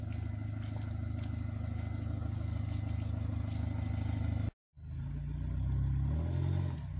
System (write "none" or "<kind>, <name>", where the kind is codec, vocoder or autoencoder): none